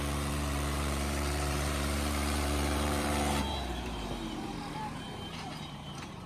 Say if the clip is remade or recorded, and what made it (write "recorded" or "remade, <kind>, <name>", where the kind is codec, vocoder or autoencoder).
remade, vocoder, BigVGAN v2